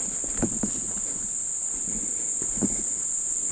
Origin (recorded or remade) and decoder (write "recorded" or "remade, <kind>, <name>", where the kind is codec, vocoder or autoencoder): recorded